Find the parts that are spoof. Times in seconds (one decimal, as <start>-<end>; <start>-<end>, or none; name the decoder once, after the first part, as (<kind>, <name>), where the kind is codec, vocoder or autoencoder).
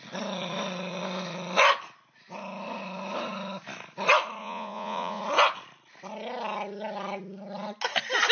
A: 4.4-5.2 (vocoder, Vocos)